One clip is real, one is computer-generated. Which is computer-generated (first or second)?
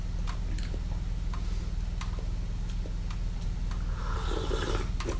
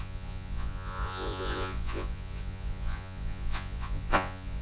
second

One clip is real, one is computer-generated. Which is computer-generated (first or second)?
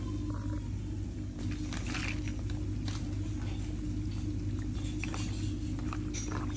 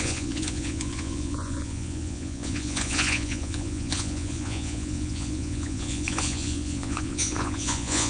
second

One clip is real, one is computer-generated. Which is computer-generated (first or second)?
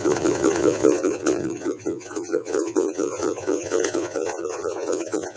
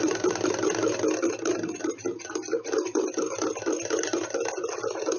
first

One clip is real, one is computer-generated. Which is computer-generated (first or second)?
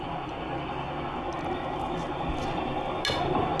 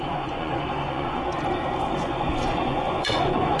second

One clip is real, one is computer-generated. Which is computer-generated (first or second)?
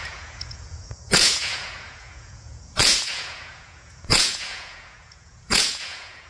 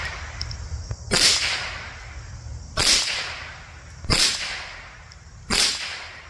first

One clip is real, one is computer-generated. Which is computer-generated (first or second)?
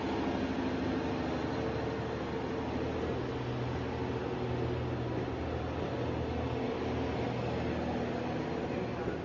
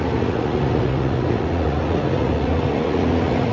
second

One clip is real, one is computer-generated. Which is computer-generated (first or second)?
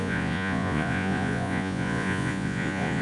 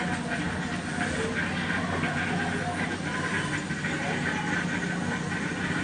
first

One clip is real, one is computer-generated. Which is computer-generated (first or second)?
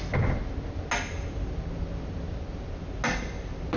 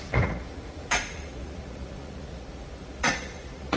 second